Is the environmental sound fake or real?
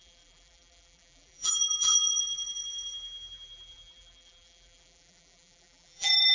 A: fake